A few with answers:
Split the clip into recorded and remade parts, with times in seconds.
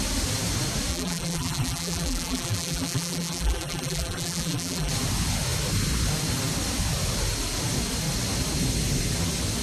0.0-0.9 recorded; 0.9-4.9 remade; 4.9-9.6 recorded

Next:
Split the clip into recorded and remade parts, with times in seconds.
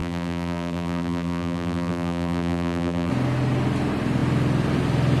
0.0-3.1 remade; 3.1-5.2 recorded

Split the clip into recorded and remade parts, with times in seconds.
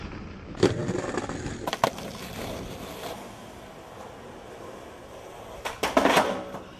0.0-6.8 recorded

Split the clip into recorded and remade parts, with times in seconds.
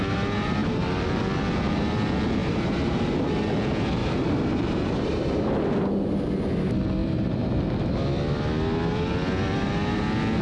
0.0-0.6 recorded; 0.6-1.2 remade; 1.2-2.4 recorded; 2.4-3.2 remade; 3.2-4.0 recorded; 4.0-5.9 remade; 5.9-7.0 recorded; 7.0-7.6 remade; 7.6-10.4 recorded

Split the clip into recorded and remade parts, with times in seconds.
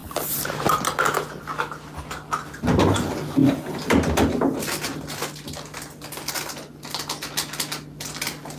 0.0-0.8 remade; 0.8-8.6 recorded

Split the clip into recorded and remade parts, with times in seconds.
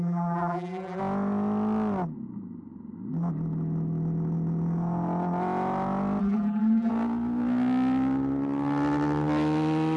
0.0-1.0 remade; 1.0-6.2 recorded; 6.2-6.9 remade; 6.9-10.0 recorded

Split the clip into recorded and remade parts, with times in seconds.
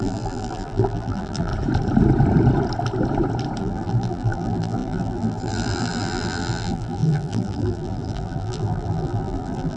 0.0-1.5 remade; 1.5-3.6 recorded; 3.6-9.8 remade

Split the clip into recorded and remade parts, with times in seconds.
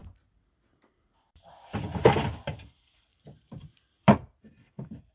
0.0-2.5 remade; 2.5-3.1 recorded; 3.1-5.1 remade